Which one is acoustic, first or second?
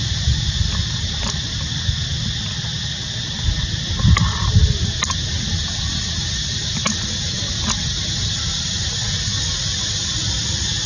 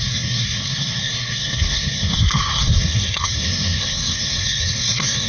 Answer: first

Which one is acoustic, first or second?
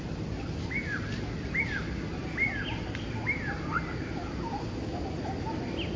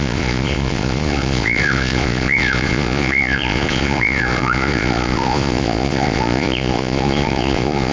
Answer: first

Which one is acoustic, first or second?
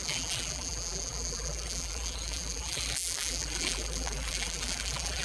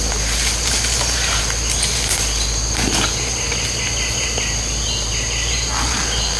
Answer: second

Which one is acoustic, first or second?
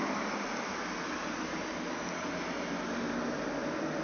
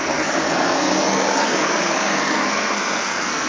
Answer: first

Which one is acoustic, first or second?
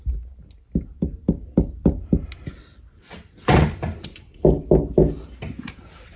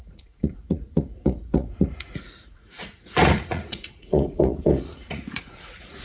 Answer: first